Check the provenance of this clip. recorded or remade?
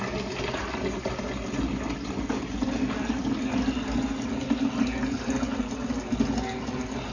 recorded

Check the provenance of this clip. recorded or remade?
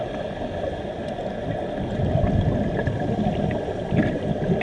remade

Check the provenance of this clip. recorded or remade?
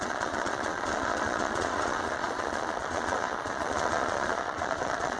remade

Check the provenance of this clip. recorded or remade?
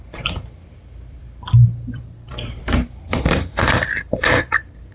remade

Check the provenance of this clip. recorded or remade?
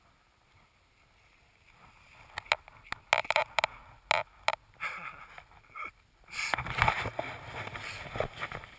recorded